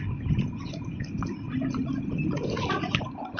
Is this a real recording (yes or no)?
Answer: yes